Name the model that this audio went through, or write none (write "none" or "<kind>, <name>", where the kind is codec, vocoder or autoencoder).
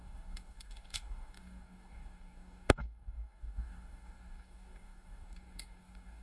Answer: codec, DAC